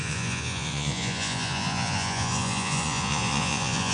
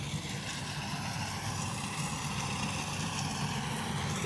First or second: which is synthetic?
first